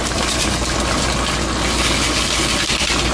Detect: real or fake real